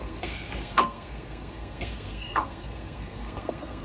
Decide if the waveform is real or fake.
fake